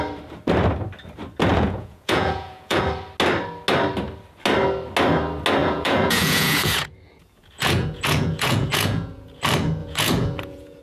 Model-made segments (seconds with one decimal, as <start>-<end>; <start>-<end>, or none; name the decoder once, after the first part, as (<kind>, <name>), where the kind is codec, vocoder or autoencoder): 1.5-2.8 (vocoder, Vocos); 5.6-9.4; 9.8-10.8